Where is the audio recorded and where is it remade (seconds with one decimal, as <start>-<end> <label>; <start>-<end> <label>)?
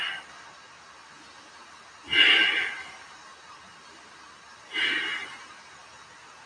0.0-6.5 recorded